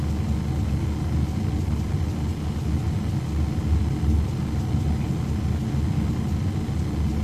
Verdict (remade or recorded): recorded